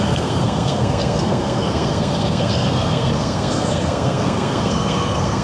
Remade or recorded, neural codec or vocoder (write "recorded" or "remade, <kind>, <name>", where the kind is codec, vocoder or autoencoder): remade, codec, SNAC